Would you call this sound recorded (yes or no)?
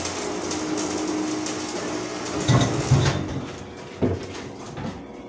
yes